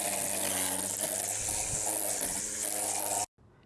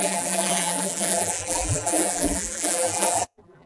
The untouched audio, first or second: first